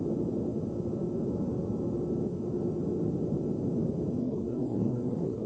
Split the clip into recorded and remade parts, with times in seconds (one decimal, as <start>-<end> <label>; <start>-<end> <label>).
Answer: 0.0-4.2 recorded; 4.2-5.5 remade